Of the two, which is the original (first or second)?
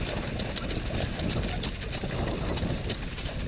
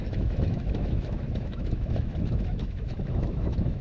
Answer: first